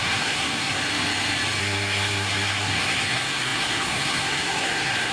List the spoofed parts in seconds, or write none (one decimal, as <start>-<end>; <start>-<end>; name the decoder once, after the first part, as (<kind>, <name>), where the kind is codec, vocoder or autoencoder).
0.0-0.8 (codec, SNAC); 1.6-5.1